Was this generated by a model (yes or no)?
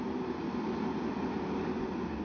no